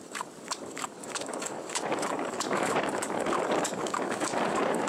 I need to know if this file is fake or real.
fake